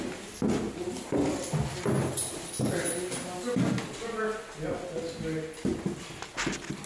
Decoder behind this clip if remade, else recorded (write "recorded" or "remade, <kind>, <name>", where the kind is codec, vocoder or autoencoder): recorded